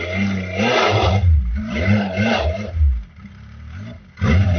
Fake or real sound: real